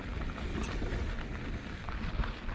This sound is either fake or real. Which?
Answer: real